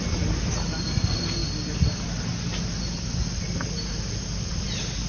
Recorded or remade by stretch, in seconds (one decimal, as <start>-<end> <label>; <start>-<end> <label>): 0.0-5.1 recorded